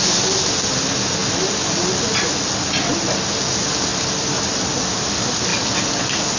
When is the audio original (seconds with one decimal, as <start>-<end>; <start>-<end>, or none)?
0.0-3.9; 5.1-6.4